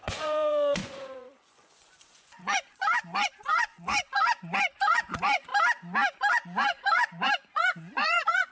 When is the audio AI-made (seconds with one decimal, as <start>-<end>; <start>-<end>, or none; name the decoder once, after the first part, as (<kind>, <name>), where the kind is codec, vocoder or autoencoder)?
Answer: 0.0-5.5 (vocoder, Vocos); 6.3-8.5